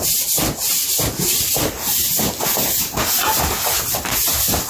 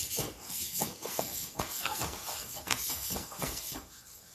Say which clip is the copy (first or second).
second